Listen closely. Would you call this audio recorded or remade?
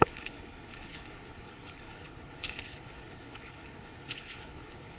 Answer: remade